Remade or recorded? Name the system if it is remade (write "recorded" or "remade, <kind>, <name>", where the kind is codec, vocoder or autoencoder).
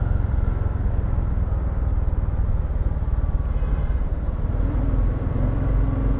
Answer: recorded